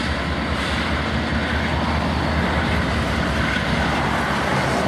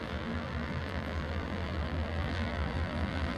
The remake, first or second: second